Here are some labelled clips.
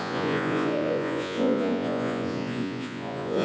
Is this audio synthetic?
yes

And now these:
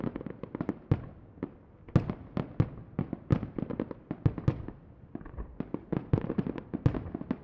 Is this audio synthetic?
no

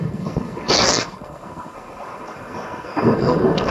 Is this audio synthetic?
yes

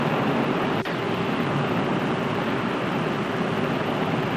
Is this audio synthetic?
no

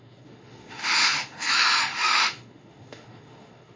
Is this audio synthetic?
yes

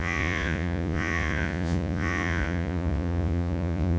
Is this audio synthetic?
yes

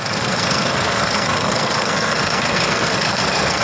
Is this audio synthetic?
yes